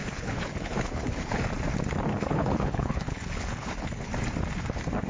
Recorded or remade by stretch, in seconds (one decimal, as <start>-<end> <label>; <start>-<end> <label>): 0.0-1.4 remade; 1.4-2.1 recorded; 2.1-4.1 remade; 4.1-5.1 recorded